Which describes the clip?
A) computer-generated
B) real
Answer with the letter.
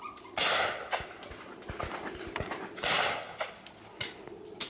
B